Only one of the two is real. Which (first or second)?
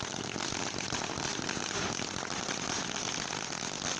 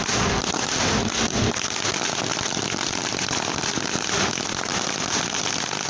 first